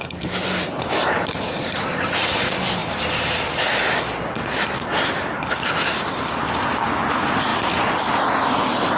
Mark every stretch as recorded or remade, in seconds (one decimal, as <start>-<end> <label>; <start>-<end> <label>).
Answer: 0.0-7.5 recorded; 7.5-8.1 remade; 8.1-9.0 recorded